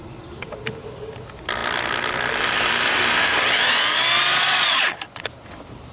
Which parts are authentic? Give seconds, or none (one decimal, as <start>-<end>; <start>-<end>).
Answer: 0.0-4.3; 5.2-5.9